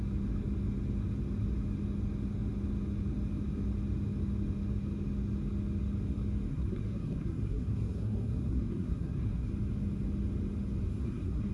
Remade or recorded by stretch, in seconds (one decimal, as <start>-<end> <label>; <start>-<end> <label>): 0.0-6.5 recorded; 6.5-9.5 remade; 9.5-10.9 recorded; 10.9-11.5 remade